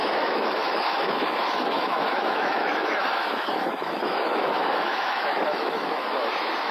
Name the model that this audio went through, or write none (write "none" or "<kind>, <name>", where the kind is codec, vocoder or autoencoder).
autoencoder, DAC-VAE